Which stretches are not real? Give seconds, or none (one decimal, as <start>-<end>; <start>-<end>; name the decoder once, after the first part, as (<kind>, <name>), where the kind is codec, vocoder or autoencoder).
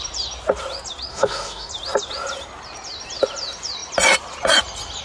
1.1-1.7 (autoencoder, DAC-VAE)